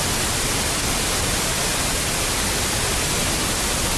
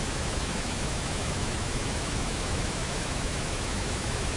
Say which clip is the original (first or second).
first